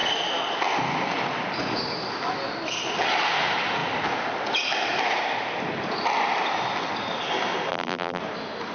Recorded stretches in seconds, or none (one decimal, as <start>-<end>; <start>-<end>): 0.0-7.7; 8.2-8.7